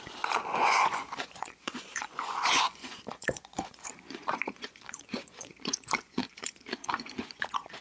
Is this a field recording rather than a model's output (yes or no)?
no